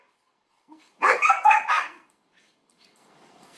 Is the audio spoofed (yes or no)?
yes